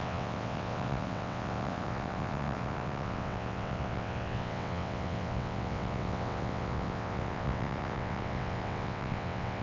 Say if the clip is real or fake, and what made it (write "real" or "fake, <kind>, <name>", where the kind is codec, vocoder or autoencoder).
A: fake, vocoder, WaveNeXt